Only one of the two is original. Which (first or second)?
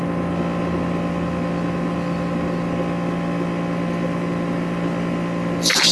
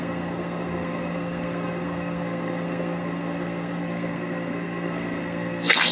first